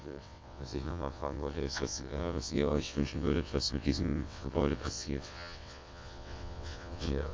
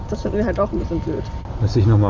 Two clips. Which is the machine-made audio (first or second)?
first